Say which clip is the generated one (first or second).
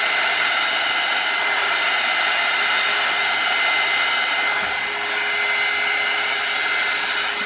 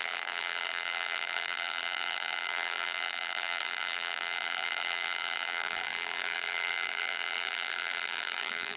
second